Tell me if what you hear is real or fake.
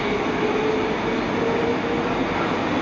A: real